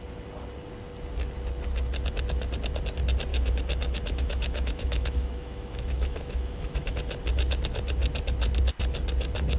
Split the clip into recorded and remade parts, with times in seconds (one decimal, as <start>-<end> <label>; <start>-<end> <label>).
0.0-3.3 recorded; 3.3-6.9 remade; 6.9-9.6 recorded